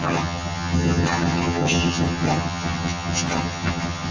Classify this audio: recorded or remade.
remade